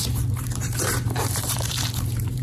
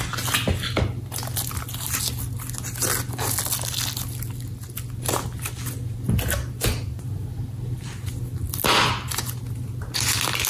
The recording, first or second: second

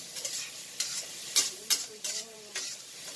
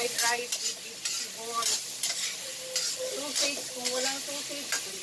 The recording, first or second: second